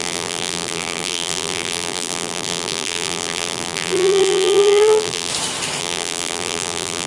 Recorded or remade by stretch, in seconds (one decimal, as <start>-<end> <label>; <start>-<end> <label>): 0.0-5.3 remade; 5.3-5.8 recorded; 5.8-7.1 remade